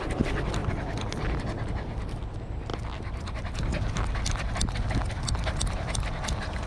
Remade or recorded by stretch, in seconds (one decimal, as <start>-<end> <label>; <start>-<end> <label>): 0.0-0.6 remade; 0.6-1.4 recorded; 1.4-2.7 remade; 2.7-6.7 recorded